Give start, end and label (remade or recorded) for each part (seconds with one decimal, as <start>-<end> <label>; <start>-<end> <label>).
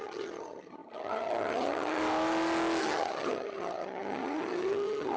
0.0-2.0 remade; 2.0-2.8 recorded; 2.8-5.2 remade